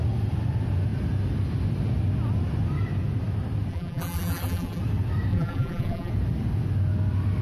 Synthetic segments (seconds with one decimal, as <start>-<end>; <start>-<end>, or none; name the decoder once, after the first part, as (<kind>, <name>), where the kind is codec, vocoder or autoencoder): 3.7-4.8 (vocoder, BigVGAN v2); 5.3-6.1